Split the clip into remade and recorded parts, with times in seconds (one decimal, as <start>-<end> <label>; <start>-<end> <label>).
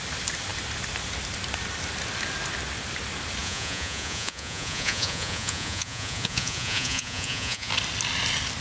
0.0-3.4 recorded; 3.4-7.7 remade; 7.7-8.6 recorded